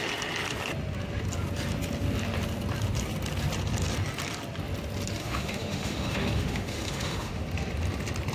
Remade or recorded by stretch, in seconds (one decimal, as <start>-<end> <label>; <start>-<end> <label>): 0.0-5.2 recorded; 5.2-7.4 remade; 7.4-8.3 recorded